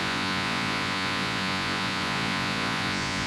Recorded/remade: remade